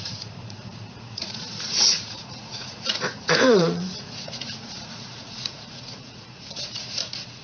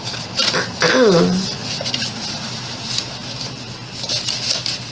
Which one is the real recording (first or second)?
second